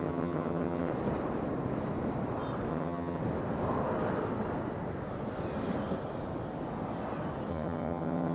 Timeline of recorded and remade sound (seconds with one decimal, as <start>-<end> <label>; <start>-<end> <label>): 0.0-0.9 remade; 0.9-2.7 recorded; 2.7-3.2 remade; 3.2-7.5 recorded; 7.5-8.3 remade